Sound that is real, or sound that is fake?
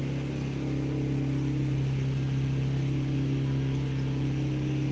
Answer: real